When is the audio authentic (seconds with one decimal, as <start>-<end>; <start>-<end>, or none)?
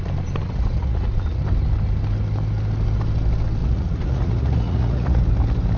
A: 0.0-0.4; 1.4-3.6; 5.2-5.8